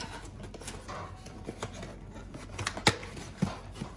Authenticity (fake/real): real